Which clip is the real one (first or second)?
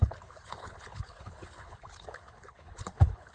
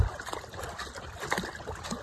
second